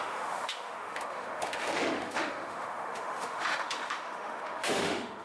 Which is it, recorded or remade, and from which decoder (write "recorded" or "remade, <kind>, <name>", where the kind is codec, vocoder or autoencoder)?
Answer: remade, autoencoder, DAC-VAE